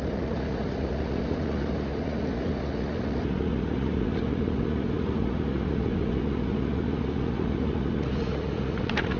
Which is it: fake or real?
fake